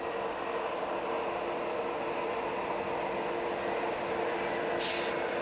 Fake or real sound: real